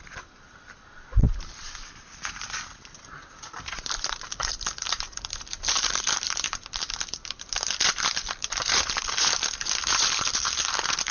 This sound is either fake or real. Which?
fake